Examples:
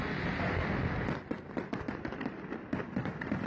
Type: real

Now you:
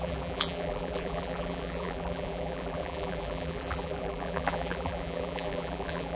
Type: fake